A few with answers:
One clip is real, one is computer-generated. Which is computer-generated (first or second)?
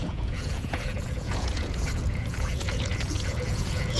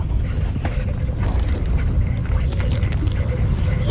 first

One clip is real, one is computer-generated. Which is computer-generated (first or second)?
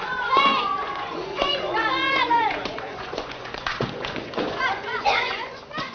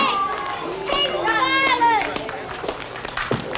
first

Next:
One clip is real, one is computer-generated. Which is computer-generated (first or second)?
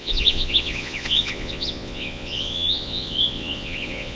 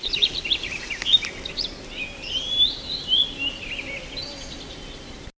first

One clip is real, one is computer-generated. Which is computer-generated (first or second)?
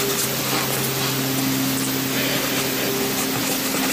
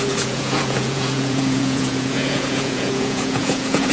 second